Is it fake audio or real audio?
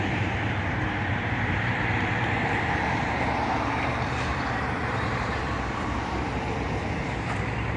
fake